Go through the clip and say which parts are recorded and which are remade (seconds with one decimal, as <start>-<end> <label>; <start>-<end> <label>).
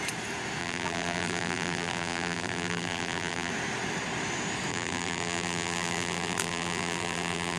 0.0-0.6 recorded; 0.6-3.5 remade; 3.5-4.7 recorded; 4.7-7.6 remade